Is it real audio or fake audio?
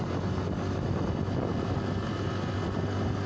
real